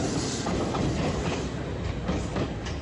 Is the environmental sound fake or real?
real